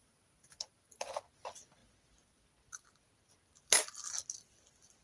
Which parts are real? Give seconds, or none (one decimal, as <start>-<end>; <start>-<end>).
1.2-5.0